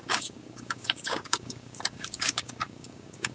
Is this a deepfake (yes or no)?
yes